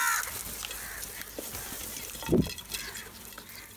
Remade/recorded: recorded